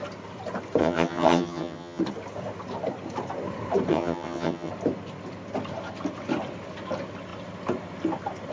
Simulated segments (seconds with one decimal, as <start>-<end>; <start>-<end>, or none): 0.8-2.0; 3.9-4.7